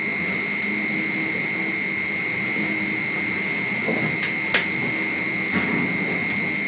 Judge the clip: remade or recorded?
recorded